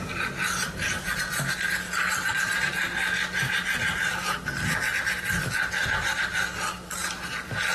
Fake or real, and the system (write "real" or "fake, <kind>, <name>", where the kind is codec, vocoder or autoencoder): real